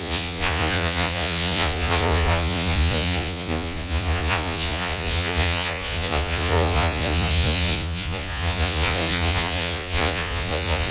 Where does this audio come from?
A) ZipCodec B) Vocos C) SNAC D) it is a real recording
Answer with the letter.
B